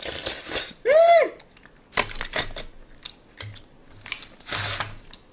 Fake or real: real